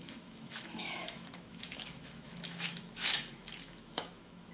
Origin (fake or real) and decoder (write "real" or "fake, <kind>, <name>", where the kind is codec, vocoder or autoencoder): fake, autoencoder, DAC-VAE